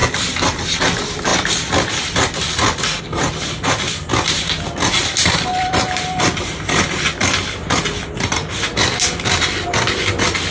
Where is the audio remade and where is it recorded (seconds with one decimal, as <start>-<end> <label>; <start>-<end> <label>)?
0.0-1.3 recorded; 1.3-3.0 remade; 3.0-5.5 recorded; 5.5-7.8 remade; 7.8-10.5 recorded